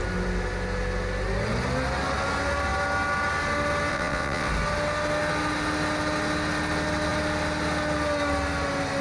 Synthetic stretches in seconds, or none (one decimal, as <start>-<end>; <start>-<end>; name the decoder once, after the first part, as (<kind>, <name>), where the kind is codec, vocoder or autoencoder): 3.9-4.5 (vocoder, WaveNeXt)